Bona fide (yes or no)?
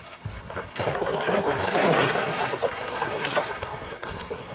no